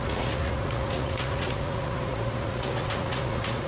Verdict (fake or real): fake